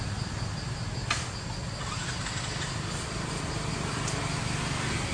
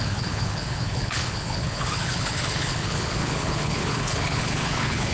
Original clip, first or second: first